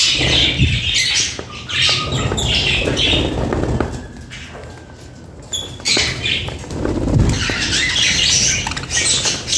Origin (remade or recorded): recorded